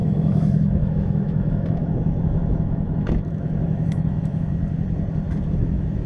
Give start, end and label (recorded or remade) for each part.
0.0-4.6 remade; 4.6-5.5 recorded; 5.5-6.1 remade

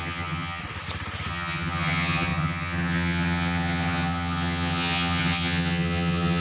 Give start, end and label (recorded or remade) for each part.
0.0-0.6 remade; 0.6-1.3 recorded; 1.3-6.4 remade

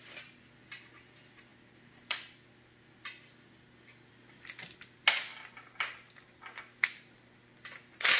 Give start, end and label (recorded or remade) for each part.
0.0-8.2 recorded

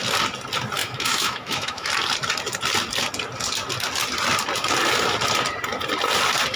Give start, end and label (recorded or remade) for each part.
0.0-0.8 recorded; 0.8-1.9 remade; 1.9-6.6 recorded